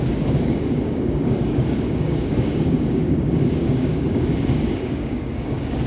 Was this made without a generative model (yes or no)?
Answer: no